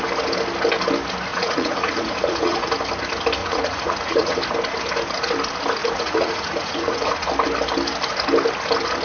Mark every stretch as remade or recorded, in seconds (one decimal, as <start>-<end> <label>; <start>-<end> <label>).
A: 0.0-1.3 recorded; 1.3-2.7 remade; 2.7-3.4 recorded; 3.4-4.4 remade; 4.4-5.8 recorded; 5.8-7.3 remade; 7.3-9.0 recorded